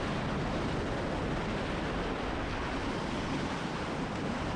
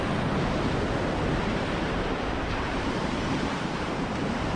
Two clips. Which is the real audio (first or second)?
first